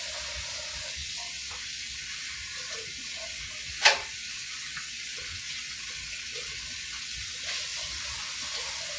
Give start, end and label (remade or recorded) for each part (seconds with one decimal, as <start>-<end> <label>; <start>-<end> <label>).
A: 0.0-1.0 recorded; 1.0-2.2 remade; 2.2-3.0 recorded; 3.0-7.2 remade; 7.2-9.0 recorded